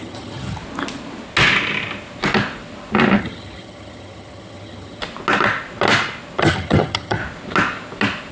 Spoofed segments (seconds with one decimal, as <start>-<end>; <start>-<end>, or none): 0.0-0.6; 3.2-5.0; 6.4-7.2